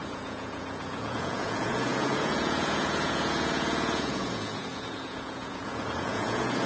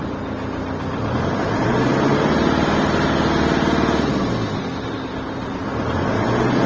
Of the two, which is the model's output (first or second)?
first